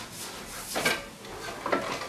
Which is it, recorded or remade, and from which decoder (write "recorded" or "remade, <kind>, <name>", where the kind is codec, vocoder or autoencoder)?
recorded